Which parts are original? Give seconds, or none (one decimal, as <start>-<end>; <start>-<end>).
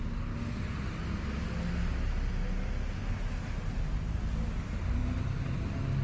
0.0-6.0